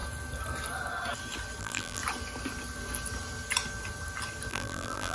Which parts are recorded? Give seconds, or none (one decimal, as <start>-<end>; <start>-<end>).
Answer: 0.0-1.6; 2.0-4.5